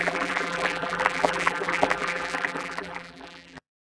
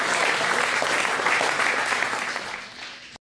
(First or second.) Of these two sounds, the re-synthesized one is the first